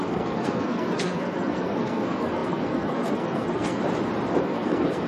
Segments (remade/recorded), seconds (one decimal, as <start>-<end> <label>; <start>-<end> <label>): 0.0-3.8 remade; 3.8-4.4 recorded; 4.4-5.1 remade